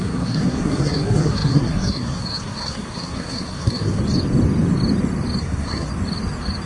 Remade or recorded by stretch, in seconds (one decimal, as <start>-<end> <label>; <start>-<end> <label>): 0.0-4.0 remade; 4.0-5.4 recorded; 5.4-5.9 remade; 5.9-6.7 recorded